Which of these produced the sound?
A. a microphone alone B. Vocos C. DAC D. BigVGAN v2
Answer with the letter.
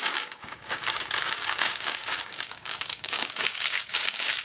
C